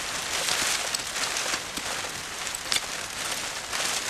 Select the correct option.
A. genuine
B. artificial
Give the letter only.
A